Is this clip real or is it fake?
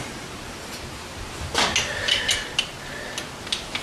real